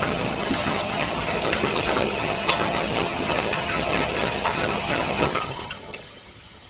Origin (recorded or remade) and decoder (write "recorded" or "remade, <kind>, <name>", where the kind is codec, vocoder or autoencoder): remade, vocoder, HiFi-GAN